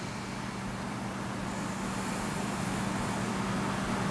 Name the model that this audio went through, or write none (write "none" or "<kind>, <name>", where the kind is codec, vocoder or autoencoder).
none